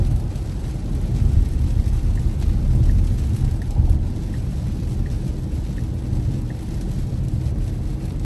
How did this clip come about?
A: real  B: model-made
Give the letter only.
A